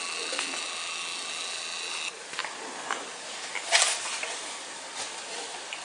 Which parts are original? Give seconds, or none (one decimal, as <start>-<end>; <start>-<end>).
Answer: 0.0-5.8